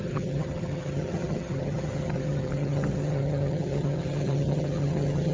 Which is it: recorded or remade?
remade